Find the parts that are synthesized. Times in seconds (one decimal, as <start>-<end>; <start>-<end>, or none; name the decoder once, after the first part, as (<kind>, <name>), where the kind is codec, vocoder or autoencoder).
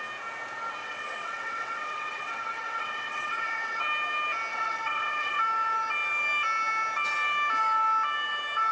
0.8-3.8 (vocoder, WaveNeXt); 4.5-5.4